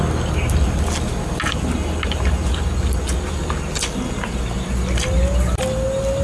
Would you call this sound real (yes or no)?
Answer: yes